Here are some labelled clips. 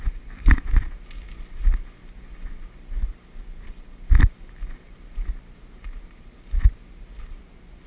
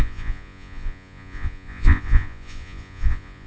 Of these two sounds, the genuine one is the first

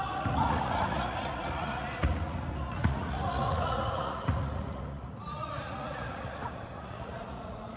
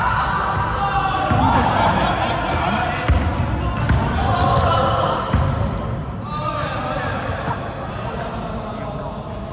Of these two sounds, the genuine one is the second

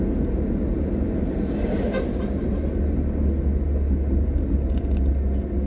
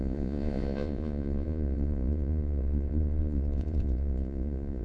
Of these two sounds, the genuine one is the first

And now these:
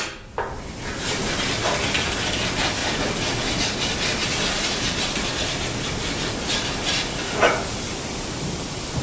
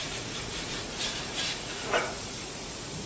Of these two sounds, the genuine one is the first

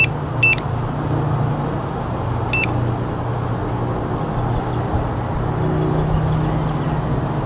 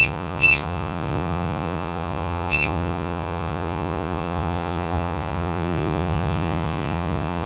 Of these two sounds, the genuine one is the first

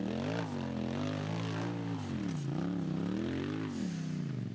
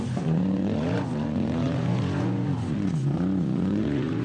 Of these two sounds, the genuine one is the first